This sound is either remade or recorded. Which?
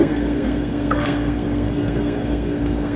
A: remade